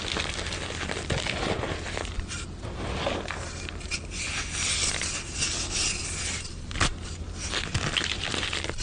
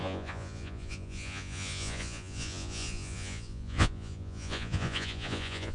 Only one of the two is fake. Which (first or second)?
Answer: second